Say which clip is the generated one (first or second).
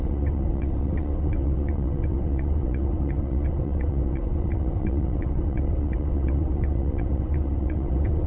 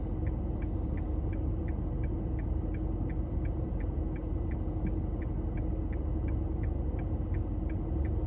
first